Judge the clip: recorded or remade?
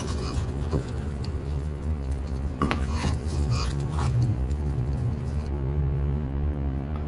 remade